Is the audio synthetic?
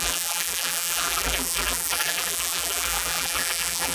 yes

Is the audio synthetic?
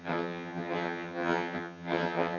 yes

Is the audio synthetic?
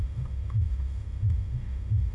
yes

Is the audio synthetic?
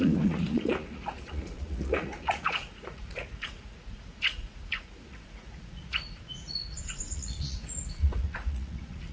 yes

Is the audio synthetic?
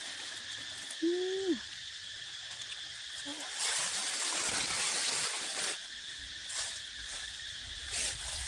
no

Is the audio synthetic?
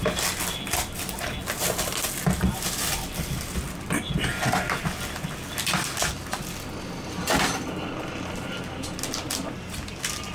no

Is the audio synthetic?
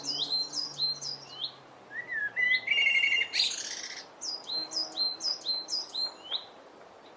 no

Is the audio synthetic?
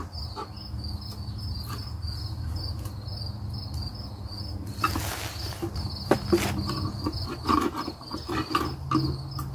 no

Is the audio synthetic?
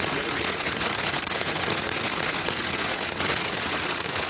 yes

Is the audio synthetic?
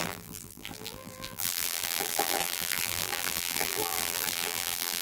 yes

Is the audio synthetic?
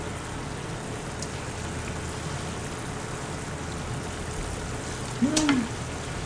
no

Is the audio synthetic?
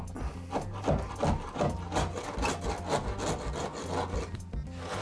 no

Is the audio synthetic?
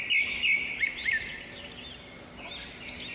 no